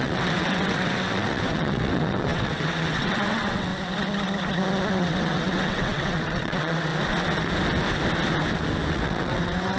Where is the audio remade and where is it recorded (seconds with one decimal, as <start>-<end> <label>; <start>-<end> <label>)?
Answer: 0.0-3.7 remade; 3.7-4.9 recorded; 4.9-6.9 remade; 6.9-8.9 recorded; 8.9-9.8 remade